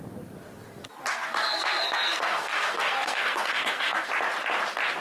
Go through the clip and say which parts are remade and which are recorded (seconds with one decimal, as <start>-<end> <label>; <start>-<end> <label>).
0.0-1.1 recorded; 1.1-4.1 remade; 4.1-5.0 recorded